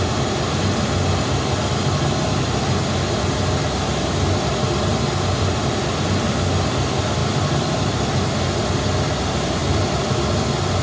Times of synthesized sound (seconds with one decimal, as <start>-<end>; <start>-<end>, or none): 7.2-7.9; 9.6-10.3